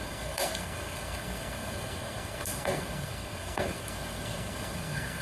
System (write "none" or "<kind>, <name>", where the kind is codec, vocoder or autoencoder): codec, SNAC